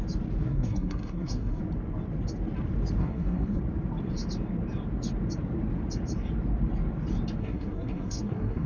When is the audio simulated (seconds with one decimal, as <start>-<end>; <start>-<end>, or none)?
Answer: 0.4-1.6; 3.0-3.6; 7.4-8.7